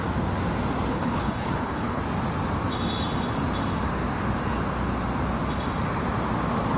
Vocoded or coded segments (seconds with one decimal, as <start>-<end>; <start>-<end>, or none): 0.9-2.0